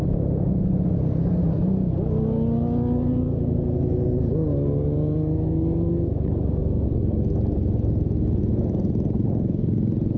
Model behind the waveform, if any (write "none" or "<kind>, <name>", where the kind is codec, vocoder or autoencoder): none